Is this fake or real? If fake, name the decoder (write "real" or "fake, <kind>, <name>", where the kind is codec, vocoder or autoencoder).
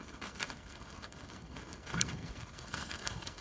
fake, codec, SNAC